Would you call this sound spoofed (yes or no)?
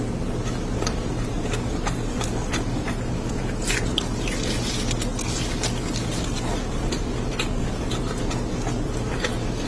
no